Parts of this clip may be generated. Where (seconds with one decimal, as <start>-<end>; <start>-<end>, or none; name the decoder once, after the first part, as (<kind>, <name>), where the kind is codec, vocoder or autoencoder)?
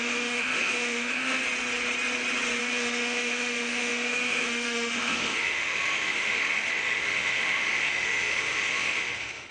0.0-1.4 (autoencoder, DAC-VAE); 2.6-9.5